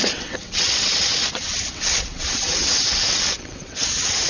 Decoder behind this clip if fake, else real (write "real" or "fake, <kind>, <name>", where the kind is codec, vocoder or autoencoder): fake, vocoder, WaveNeXt